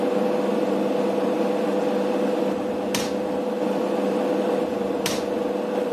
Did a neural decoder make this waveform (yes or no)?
no